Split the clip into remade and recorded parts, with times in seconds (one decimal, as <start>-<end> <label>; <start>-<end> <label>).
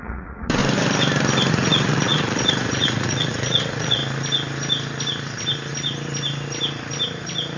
0.0-0.6 remade; 0.6-1.5 recorded; 1.5-4.0 remade; 4.0-7.6 recorded